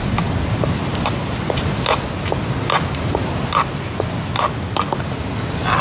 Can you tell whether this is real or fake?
real